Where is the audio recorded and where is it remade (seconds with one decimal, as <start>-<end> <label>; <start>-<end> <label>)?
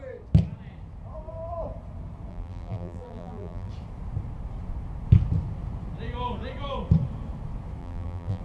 0.0-2.3 recorded; 2.3-3.7 remade; 3.7-7.8 recorded; 7.8-8.4 remade